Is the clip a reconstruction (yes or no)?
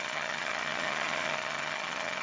yes